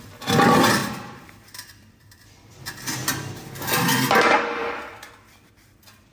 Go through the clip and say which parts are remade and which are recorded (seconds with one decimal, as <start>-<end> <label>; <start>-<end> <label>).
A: 0.0-0.8 recorded; 0.8-2.6 remade; 2.6-4.6 recorded; 4.6-5.1 remade; 5.1-6.1 recorded